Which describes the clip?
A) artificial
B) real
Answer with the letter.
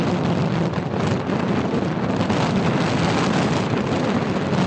B